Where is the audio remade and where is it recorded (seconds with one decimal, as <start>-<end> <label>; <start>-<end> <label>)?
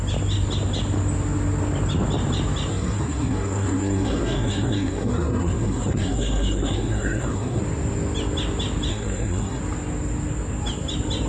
0.0-2.7 recorded; 2.7-7.6 remade; 7.6-8.9 recorded; 8.9-9.6 remade; 9.6-11.3 recorded